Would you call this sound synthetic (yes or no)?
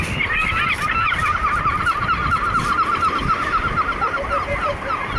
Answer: no